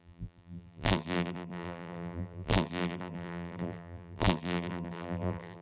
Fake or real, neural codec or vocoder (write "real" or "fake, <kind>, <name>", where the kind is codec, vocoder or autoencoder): fake, vocoder, BigVGAN v2